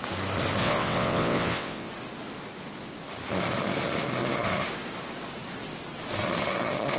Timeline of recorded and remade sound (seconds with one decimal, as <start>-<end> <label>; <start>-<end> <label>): 0.0-0.6 recorded; 0.6-1.9 remade; 1.9-7.0 recorded